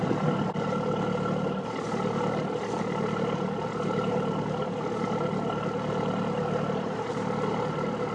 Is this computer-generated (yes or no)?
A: no